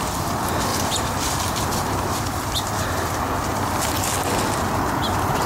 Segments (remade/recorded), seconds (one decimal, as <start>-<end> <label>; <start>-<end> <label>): 0.0-0.7 recorded; 0.7-3.2 remade; 3.2-4.2 recorded; 4.2-5.5 remade